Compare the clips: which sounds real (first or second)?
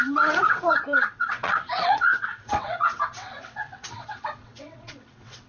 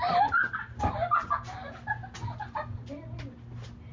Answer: second